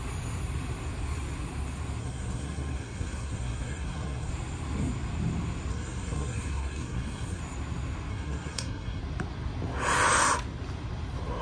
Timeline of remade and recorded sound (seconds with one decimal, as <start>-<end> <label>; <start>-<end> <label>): 0.0-2.0 recorded; 2.0-4.3 remade; 4.3-5.7 recorded; 5.7-7.4 remade; 7.4-8.1 recorded; 8.1-9.0 remade; 9.0-11.4 recorded